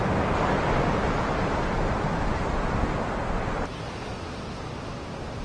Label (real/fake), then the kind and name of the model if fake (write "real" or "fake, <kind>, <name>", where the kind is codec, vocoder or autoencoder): real